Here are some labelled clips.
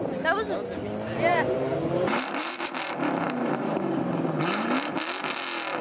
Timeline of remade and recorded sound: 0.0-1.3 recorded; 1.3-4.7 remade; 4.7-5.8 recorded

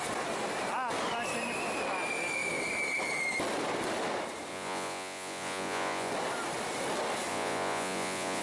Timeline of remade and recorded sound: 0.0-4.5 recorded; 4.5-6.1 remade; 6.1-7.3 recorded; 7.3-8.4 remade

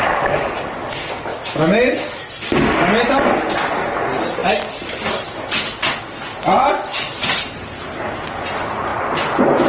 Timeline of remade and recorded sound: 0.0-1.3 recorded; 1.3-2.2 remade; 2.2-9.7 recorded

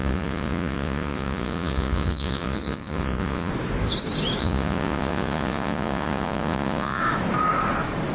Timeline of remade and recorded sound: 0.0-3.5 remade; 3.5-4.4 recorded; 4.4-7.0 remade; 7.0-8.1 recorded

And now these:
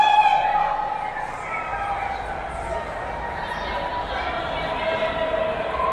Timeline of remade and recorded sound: 0.0-5.9 recorded

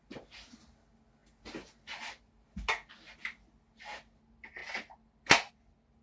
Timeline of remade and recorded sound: 0.0-6.0 recorded

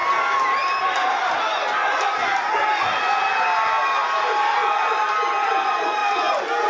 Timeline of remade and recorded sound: 0.0-6.7 recorded